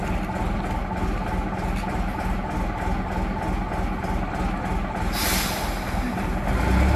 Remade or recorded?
recorded